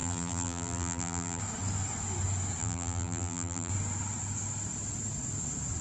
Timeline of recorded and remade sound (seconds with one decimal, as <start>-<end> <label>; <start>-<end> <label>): 0.0-1.4 remade; 1.4-2.6 recorded; 2.6-3.7 remade; 3.7-5.8 recorded